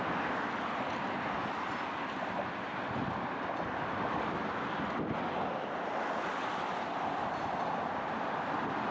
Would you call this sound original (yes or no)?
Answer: yes